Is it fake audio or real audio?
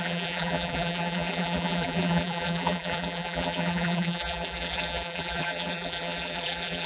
fake